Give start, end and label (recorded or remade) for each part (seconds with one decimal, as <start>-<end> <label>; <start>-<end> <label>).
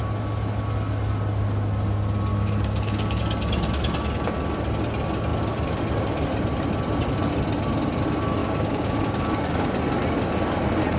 0.0-2.3 recorded; 2.3-3.2 remade; 3.2-8.4 recorded; 8.4-9.8 remade; 9.8-11.0 recorded